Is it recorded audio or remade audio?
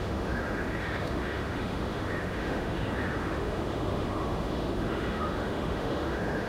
remade